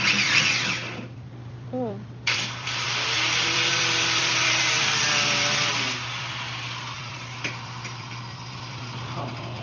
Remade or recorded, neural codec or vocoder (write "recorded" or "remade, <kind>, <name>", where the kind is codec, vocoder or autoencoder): remade, vocoder, BigVGAN v2